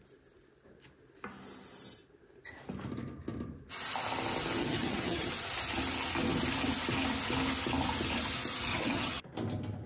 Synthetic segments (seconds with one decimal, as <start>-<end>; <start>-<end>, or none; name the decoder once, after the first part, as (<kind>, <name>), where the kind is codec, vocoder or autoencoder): 4.6-5.3 (vocoder, HiFi-GAN); 8.7-9.2